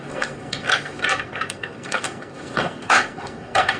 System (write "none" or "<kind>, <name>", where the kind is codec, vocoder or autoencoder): codec, SNAC